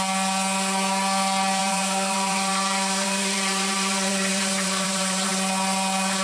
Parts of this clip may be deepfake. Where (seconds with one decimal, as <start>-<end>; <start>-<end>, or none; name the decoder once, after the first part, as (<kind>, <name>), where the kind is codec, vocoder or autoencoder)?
1.6-5.3 (vocoder, BigVGAN v2)